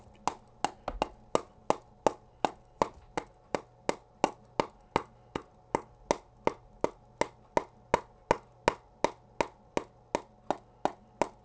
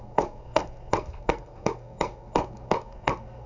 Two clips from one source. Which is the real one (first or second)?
first